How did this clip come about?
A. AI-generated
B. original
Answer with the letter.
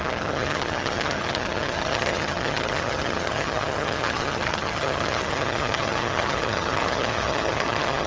A